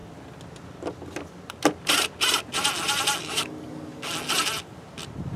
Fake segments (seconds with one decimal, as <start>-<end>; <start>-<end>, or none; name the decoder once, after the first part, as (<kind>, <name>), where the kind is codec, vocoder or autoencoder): 3.2-4.1 (codec, DAC)